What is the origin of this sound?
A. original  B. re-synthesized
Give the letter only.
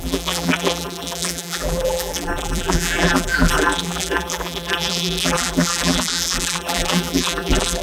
B